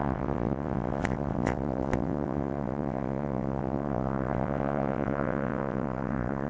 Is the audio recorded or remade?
remade